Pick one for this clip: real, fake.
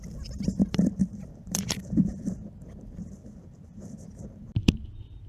fake